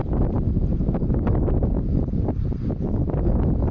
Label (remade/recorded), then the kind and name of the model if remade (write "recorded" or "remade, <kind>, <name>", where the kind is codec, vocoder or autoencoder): recorded